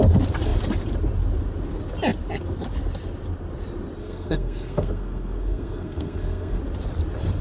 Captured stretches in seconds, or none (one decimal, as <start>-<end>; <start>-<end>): 0.0-4.0; 6.6-7.4